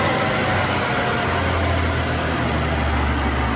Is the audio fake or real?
real